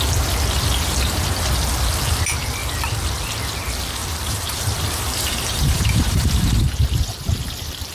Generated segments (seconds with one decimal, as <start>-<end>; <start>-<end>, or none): 4.0-6.3